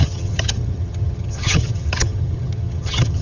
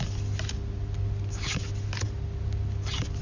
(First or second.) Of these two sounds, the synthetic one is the first